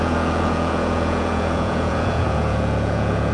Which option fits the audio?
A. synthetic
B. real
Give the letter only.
A